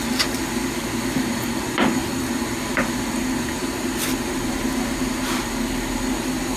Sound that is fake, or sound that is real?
real